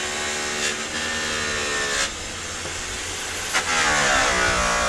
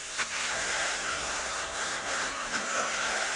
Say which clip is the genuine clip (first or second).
first